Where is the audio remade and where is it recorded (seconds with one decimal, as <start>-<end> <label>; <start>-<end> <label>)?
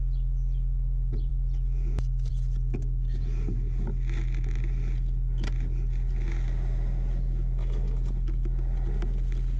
0.0-9.6 recorded